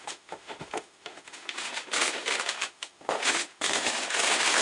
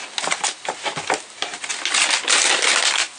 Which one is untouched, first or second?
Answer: second